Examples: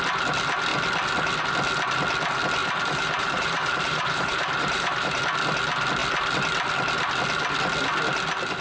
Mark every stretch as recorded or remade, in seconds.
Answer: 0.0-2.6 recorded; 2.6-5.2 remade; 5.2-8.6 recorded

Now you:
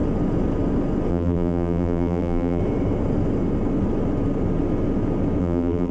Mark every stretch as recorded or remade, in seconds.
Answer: 0.0-1.1 recorded; 1.1-2.6 remade; 2.6-5.4 recorded; 5.4-5.9 remade

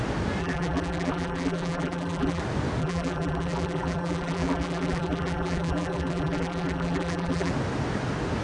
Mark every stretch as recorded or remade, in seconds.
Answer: 0.0-0.4 recorded; 0.4-2.4 remade; 2.4-2.8 recorded; 2.8-7.5 remade; 7.5-8.4 recorded

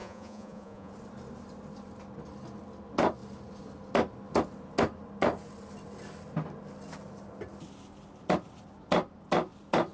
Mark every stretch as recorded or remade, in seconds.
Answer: 0.0-0.9 remade; 0.9-9.9 recorded

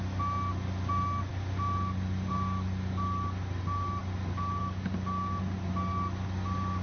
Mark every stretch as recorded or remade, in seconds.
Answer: 0.0-6.8 recorded

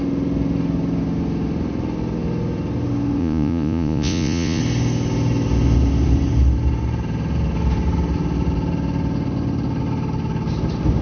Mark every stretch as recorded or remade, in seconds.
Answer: 0.0-3.2 recorded; 3.2-4.6 remade; 4.6-11.0 recorded